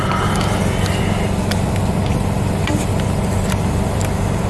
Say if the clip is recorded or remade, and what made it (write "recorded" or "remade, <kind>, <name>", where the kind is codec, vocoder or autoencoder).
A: recorded